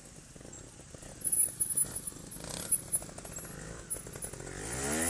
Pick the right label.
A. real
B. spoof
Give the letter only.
A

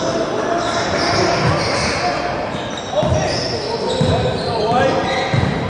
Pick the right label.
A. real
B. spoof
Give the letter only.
A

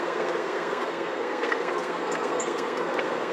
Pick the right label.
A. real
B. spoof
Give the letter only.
B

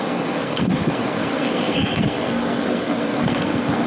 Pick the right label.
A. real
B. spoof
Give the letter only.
B